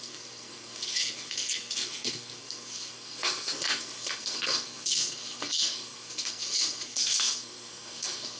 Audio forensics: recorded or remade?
remade